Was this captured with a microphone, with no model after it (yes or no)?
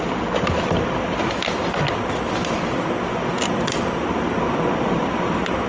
yes